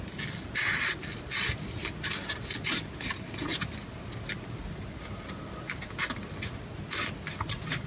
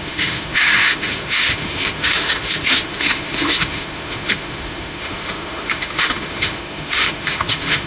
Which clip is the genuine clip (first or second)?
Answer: first